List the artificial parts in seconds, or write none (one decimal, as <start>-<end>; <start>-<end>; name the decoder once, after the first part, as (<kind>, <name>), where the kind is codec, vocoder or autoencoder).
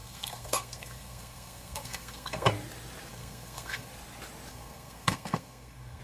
0.0-2.5 (codec, SNAC); 3.1-3.9; 4.5-6.0